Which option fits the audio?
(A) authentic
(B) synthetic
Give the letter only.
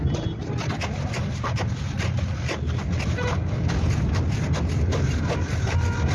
A